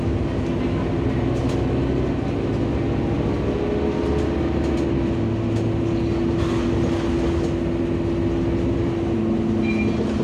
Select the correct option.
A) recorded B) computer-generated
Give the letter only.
A